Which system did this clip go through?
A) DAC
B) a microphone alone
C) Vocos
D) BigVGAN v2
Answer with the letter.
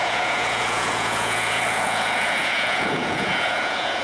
C